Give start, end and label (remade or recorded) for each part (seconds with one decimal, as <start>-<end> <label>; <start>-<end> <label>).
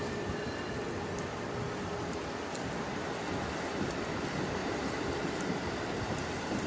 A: 0.0-4.6 recorded; 4.6-6.7 remade